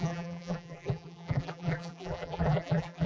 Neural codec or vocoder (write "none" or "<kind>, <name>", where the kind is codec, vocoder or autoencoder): vocoder, BigVGAN v2